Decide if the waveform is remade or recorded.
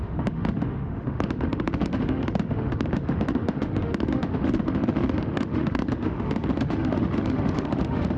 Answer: remade